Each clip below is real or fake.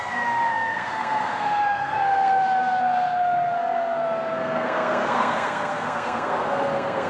fake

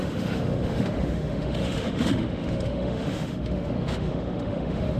fake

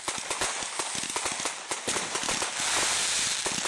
real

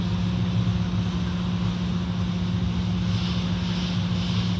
real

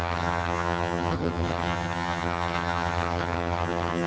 fake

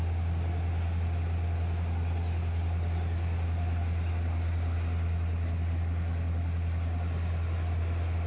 real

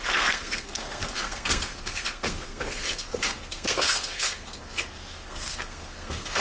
fake